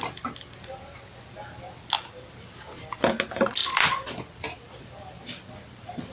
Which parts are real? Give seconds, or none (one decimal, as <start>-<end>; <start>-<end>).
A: 0.0-6.1